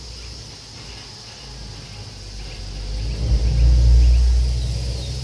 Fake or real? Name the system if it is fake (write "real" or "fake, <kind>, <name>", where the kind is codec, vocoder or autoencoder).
real